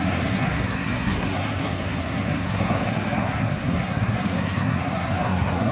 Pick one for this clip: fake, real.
fake